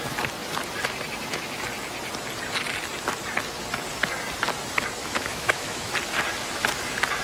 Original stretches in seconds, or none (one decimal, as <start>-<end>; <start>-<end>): 0.0-5.0; 5.9-7.2